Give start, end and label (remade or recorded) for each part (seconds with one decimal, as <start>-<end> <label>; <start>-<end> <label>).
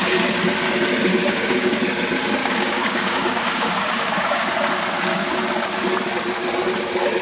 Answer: 0.0-1.1 recorded; 1.1-1.8 remade; 1.8-2.4 recorded; 2.4-4.5 remade; 4.5-5.1 recorded; 5.1-5.7 remade; 5.7-7.2 recorded